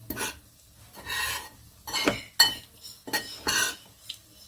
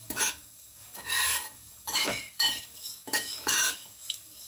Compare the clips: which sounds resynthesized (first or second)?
second